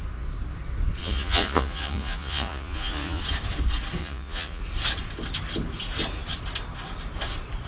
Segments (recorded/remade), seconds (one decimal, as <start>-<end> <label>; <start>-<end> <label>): 0.0-1.0 recorded; 1.0-3.2 remade; 3.2-4.0 recorded; 4.0-4.6 remade; 4.6-7.7 recorded

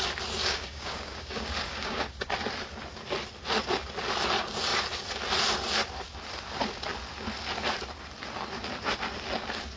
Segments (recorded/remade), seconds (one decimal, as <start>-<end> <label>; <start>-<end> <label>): 0.0-0.5 recorded; 0.5-2.3 remade; 2.3-9.8 recorded